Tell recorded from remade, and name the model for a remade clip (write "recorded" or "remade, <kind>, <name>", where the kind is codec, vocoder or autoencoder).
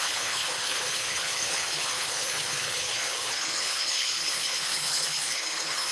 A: remade, codec, HILCodec